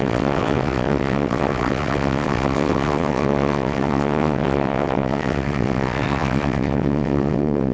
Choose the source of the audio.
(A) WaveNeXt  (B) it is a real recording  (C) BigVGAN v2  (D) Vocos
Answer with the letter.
A